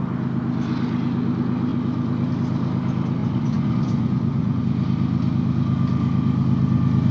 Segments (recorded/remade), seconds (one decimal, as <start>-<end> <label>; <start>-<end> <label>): 0.0-3.2 recorded; 3.2-4.6 remade; 4.6-7.1 recorded